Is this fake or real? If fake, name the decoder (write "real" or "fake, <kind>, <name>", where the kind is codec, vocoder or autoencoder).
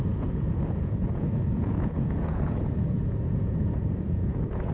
fake, vocoder, Vocos